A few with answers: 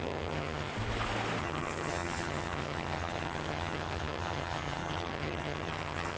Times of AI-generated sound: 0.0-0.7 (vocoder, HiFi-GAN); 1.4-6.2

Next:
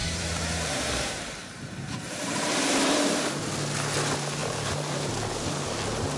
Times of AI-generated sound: 0.0-3.5 (vocoder, BigVGAN v2); 4.4-5.1

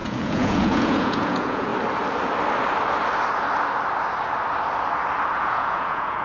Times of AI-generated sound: 0.0-1.7 (vocoder, Vocos); 5.4-6.2